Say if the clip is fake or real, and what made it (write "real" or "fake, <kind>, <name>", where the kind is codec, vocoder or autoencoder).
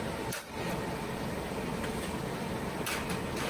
real